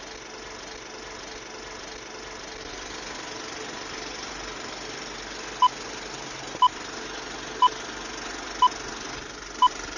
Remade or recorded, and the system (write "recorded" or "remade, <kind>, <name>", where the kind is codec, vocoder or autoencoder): recorded